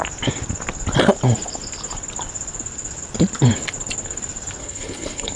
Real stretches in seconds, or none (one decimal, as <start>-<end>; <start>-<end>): 0.0-4.6